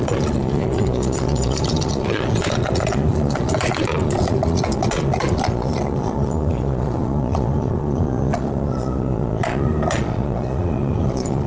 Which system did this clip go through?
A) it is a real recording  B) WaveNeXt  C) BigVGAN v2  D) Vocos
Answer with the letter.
D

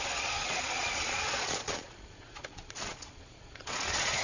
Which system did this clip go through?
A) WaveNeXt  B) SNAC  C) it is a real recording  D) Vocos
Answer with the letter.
D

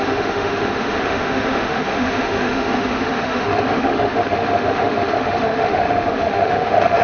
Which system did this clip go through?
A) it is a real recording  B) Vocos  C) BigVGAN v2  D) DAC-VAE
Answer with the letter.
D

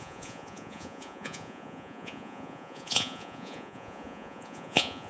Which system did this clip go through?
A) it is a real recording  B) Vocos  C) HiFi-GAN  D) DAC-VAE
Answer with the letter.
B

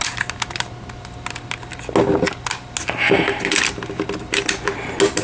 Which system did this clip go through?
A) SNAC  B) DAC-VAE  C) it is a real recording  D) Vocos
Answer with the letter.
C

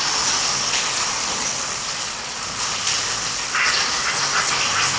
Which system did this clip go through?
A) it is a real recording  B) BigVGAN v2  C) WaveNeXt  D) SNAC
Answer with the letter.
A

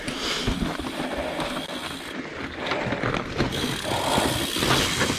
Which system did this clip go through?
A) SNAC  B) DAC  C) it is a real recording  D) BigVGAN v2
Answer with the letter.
C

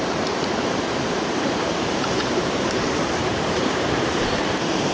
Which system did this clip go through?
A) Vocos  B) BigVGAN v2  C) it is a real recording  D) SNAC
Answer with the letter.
B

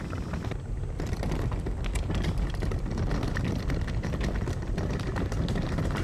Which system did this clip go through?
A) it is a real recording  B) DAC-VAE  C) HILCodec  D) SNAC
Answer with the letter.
A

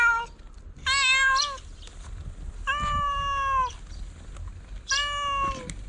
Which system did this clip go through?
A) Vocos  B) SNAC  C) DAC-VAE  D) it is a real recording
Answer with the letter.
D